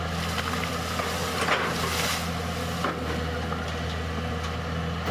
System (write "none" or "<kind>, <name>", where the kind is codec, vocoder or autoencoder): none